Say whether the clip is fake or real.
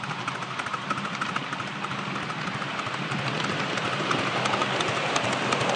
real